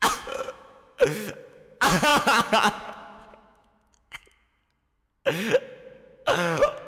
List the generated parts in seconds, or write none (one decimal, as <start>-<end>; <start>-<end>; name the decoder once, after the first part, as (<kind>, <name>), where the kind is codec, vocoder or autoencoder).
0.0-1.0 (autoencoder, DAC-VAE); 1.5-4.6; 5.6-6.9